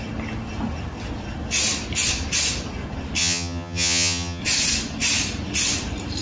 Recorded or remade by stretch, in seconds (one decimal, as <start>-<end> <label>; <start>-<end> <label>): 0.0-3.2 recorded; 3.2-4.4 remade; 4.4-6.2 recorded